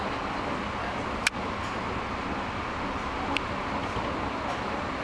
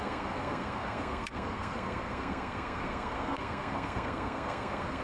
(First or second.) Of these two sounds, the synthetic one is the second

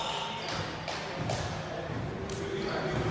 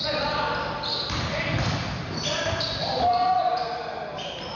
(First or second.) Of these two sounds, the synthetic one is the second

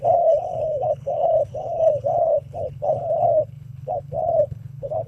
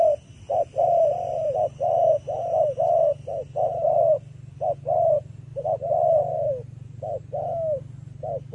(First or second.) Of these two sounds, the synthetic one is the first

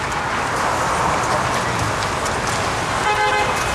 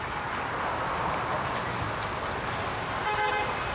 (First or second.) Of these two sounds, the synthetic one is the second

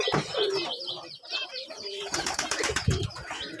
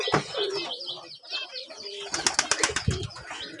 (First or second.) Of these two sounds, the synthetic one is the first